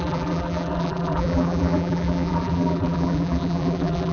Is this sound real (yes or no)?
no